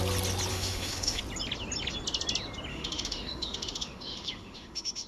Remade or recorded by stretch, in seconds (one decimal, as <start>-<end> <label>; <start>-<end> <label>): 0.0-0.5 recorded; 0.5-1.2 remade; 1.2-2.7 recorded; 2.7-5.1 remade